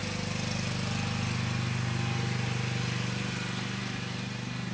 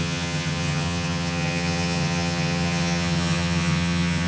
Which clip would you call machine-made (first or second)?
second